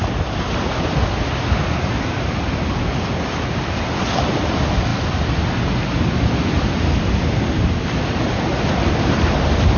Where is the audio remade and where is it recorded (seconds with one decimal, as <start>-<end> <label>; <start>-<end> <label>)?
0.0-9.8 recorded